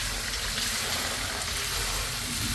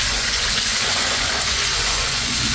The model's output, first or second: second